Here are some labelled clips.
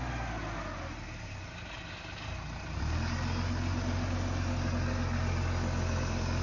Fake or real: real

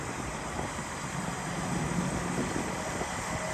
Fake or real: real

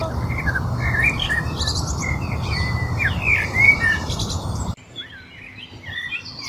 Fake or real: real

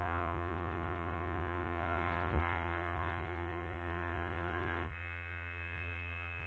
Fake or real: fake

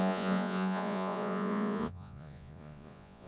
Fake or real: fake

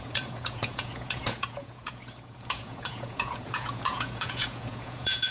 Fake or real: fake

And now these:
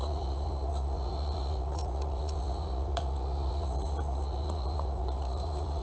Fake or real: fake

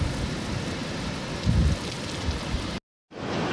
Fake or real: real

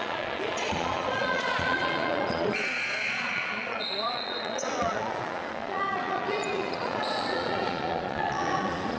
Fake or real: fake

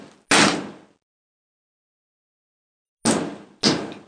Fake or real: real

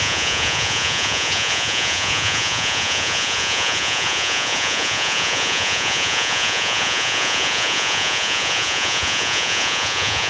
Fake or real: fake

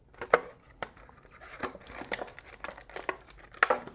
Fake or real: real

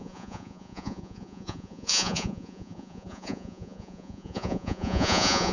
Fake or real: fake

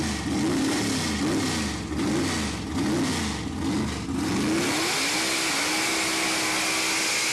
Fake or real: real